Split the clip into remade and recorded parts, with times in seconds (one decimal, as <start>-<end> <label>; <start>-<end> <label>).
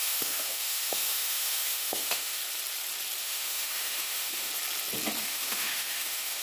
0.0-2.4 remade; 2.4-3.2 recorded; 3.2-4.5 remade; 4.5-5.2 recorded; 5.2-6.4 remade